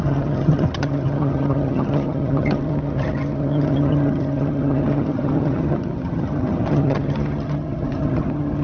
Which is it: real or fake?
fake